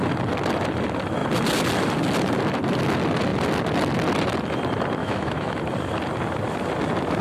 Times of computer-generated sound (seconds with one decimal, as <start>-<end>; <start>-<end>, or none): 5.0-5.6